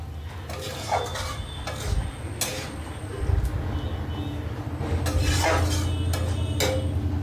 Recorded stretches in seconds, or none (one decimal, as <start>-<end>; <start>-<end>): 0.0-2.5; 3.3-7.2